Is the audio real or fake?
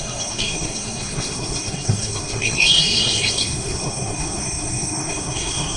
fake